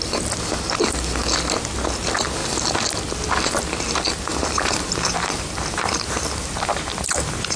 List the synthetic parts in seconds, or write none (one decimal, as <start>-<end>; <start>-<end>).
4.3-7.6